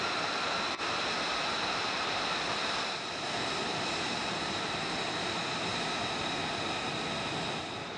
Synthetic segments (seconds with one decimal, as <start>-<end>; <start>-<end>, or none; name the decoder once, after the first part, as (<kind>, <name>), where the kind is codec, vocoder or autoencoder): 0.0-5.7 (vocoder, BigVGAN v2); 7.6-8.0